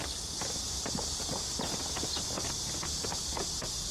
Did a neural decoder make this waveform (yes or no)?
no